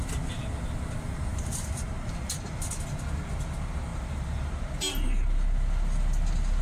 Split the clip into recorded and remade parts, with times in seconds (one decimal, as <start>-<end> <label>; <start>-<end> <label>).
0.0-1.3 recorded; 1.3-2.7 remade; 2.7-3.9 recorded; 3.9-4.5 remade; 4.5-6.6 recorded